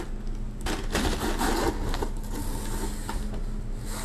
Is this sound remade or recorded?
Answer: recorded